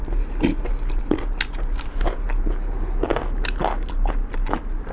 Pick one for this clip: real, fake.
real